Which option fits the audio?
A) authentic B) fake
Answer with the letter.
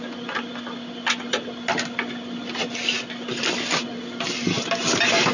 A